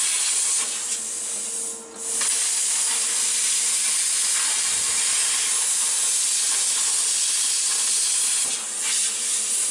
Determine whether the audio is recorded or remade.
recorded